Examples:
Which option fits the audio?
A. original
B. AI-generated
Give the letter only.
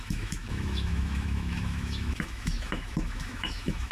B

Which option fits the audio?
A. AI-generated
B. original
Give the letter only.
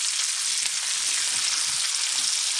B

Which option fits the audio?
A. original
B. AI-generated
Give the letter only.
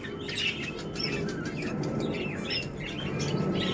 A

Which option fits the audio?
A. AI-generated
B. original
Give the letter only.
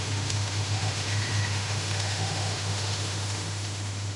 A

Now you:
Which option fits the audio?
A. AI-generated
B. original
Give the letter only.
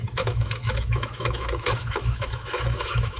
A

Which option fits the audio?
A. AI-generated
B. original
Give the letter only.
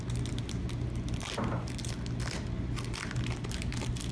B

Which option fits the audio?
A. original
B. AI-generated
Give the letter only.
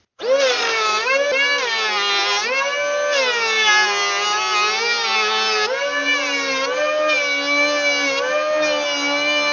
A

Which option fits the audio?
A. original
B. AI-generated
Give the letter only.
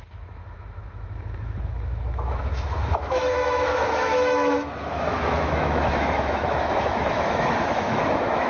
B